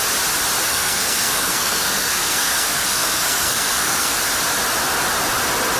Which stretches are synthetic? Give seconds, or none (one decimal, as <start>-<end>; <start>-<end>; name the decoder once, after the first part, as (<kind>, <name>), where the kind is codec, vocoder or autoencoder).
0.7-4.2 (codec, SNAC)